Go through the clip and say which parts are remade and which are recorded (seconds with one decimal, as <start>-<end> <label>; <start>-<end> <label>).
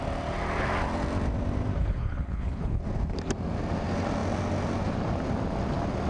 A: 0.0-1.8 recorded; 1.8-2.8 remade; 2.8-6.1 recorded